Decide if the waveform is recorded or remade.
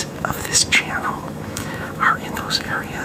remade